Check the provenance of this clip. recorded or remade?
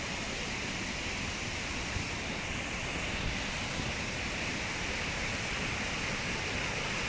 recorded